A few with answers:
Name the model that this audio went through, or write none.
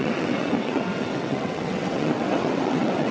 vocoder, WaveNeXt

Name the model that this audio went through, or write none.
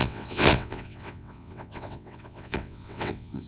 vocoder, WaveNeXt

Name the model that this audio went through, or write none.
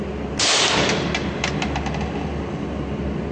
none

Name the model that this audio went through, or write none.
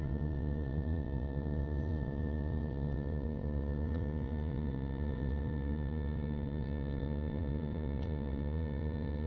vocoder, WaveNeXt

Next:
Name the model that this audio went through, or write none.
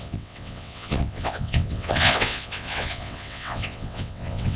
vocoder, WaveNeXt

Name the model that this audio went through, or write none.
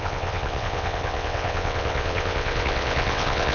vocoder, WaveNeXt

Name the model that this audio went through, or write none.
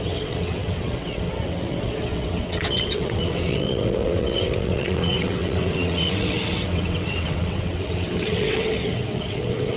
vocoder, WaveNeXt